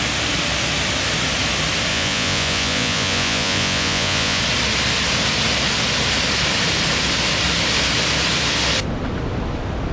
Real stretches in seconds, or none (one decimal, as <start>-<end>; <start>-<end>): 0.0-1.9; 4.4-9.9